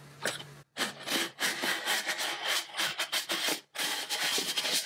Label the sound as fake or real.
real